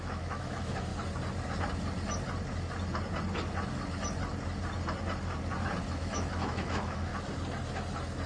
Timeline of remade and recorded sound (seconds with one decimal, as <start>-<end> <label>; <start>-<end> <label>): 0.0-0.9 remade; 0.9-5.9 recorded; 5.9-7.1 remade; 7.1-8.3 recorded